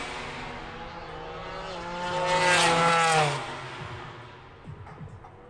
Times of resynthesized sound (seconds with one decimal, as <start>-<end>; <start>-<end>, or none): none